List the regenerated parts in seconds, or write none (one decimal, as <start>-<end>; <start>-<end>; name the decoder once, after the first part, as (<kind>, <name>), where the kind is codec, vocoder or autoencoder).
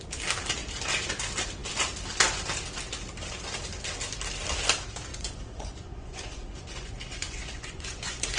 5.1-8.4 (vocoder, Vocos)